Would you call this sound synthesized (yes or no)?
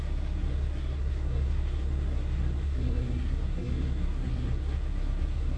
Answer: yes